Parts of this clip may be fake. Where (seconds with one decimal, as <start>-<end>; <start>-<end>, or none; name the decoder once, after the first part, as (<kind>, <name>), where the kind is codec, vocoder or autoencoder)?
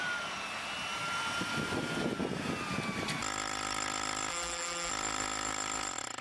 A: 4.3-4.9 (vocoder, BigVGAN v2)